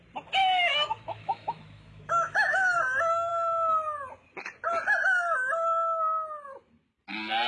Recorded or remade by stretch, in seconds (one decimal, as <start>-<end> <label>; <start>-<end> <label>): 0.0-0.4 recorded; 0.4-2.8 remade; 2.8-7.5 recorded